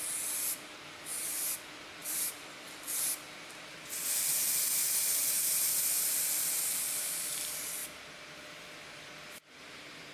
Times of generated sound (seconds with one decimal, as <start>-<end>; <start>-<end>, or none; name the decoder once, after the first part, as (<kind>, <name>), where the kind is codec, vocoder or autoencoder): 2.0-6.6 (vocoder, BigVGAN v2)